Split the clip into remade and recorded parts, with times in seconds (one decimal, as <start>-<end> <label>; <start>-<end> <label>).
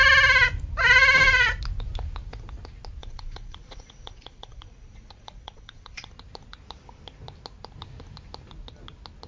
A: 0.0-3.0 recorded; 3.0-6.1 remade; 6.1-9.3 recorded